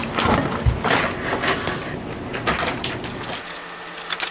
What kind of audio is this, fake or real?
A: real